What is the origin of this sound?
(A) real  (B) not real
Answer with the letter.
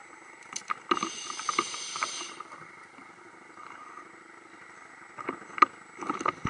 A